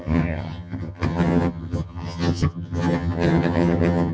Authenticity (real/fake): fake